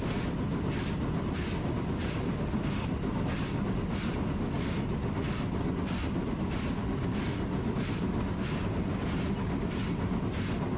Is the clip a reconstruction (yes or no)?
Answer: no